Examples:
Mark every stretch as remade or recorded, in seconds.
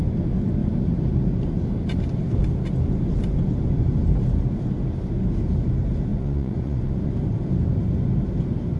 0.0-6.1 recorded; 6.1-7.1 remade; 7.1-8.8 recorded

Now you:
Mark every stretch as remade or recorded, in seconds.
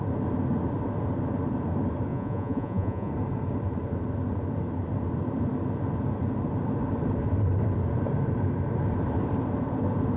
0.0-2.1 recorded; 2.1-3.1 remade; 3.1-10.2 recorded